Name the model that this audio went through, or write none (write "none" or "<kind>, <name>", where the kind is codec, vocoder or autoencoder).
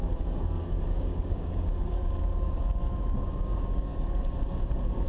codec, DAC